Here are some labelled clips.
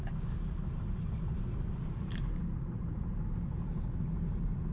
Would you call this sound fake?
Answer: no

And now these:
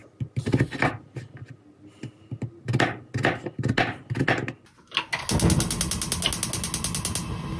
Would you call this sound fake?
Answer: no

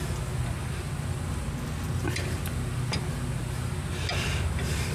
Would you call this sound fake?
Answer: no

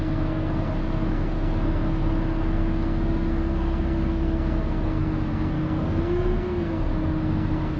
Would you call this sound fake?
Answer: yes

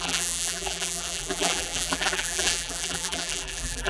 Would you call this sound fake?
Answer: yes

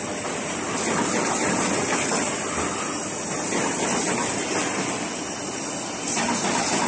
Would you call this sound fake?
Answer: no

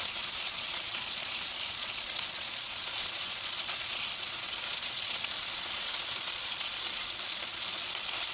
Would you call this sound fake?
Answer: yes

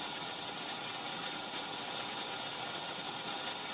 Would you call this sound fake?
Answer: yes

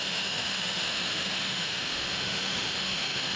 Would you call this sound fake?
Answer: yes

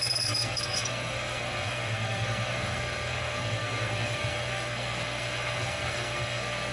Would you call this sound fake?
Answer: yes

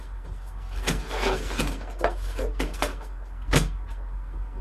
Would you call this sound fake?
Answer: yes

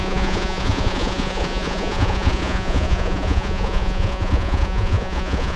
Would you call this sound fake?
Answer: yes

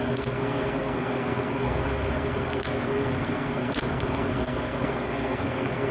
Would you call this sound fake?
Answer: yes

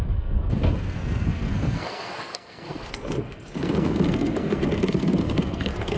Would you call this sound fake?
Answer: yes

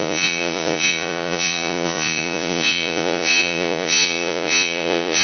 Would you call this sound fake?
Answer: yes